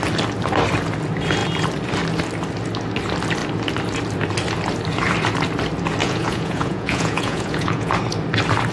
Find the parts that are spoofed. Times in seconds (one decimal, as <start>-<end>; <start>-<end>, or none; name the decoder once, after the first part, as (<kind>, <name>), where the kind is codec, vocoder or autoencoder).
6.0-7.9 (vocoder, Vocos)